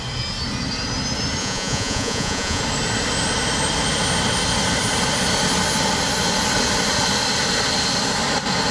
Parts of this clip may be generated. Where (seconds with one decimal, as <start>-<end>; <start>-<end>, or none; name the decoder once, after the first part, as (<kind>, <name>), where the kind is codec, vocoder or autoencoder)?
1.4-2.6 (vocoder, Vocos)